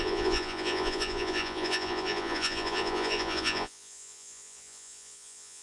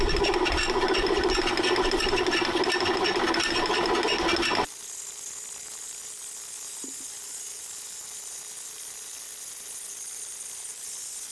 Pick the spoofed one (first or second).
first